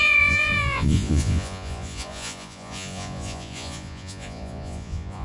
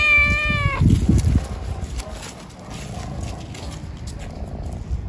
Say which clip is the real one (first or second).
second